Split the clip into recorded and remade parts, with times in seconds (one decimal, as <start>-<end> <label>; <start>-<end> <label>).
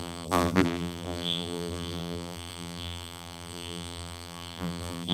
0.0-5.1 remade